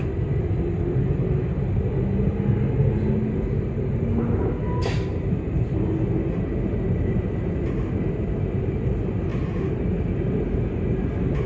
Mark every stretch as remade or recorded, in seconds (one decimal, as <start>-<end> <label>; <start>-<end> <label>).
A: 0.0-11.5 recorded